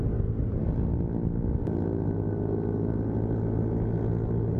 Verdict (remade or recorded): recorded